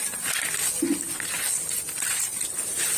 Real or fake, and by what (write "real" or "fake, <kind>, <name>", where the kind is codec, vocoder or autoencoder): real